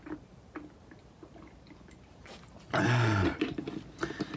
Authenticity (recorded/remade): recorded